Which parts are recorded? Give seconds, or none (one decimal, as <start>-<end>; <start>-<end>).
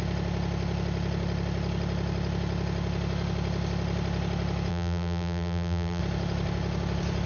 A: 0.0-4.7; 6.0-7.3